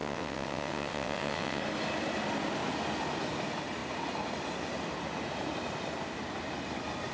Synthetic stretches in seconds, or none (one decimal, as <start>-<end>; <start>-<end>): 0.0-1.6